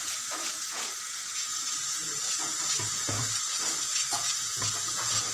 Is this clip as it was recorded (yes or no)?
no